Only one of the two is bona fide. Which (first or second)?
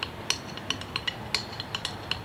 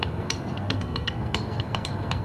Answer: first